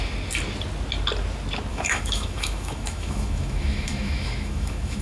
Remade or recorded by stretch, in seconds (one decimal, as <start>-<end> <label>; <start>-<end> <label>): 0.0-1.7 recorded; 1.7-5.0 remade